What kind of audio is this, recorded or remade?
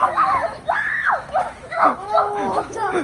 remade